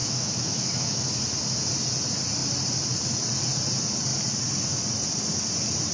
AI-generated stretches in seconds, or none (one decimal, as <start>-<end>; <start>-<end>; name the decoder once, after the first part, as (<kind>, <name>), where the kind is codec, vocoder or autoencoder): 0.0-1.1 (autoencoder, DAC-VAE)